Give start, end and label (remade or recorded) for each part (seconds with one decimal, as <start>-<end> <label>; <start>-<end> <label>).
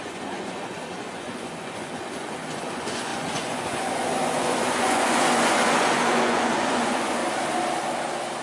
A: 0.0-7.2 remade; 7.2-8.4 recorded